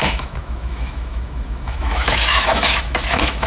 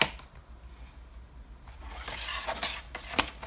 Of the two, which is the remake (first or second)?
first